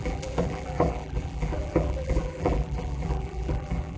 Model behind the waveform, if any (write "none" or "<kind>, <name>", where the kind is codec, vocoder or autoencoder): vocoder, BigVGAN v2